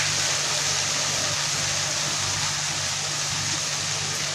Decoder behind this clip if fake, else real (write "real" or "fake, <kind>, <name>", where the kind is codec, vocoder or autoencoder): real